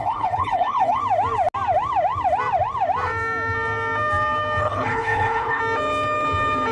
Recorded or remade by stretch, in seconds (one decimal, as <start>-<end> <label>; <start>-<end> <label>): 0.0-1.0 remade; 1.0-4.6 recorded; 4.6-5.6 remade; 5.6-6.7 recorded